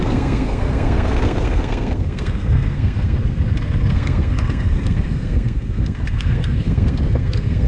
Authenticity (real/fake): fake